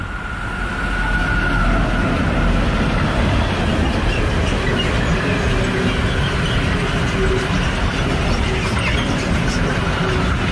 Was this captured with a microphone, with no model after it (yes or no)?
yes